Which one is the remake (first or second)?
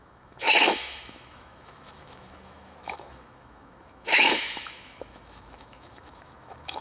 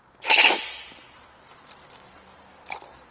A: first